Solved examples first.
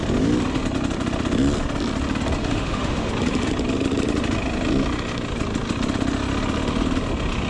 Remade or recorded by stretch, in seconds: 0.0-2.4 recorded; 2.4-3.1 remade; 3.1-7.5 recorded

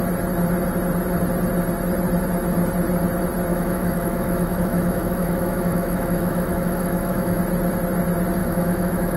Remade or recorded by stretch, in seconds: 0.0-3.5 recorded; 3.5-7.4 remade; 7.4-8.4 recorded; 8.4-9.2 remade

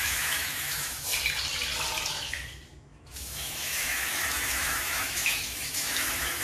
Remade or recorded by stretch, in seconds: 0.0-1.1 remade; 1.1-2.1 recorded; 2.1-6.4 remade